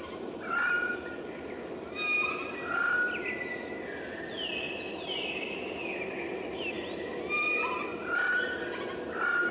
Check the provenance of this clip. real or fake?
real